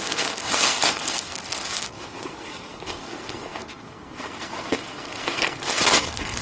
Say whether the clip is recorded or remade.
remade